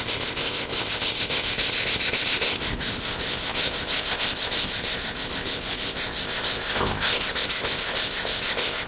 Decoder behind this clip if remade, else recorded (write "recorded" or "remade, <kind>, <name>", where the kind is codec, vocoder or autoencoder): remade, codec, ZipCodec